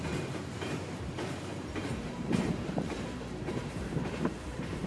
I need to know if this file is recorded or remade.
remade